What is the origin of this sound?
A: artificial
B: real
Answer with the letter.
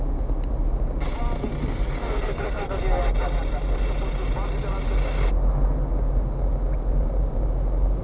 B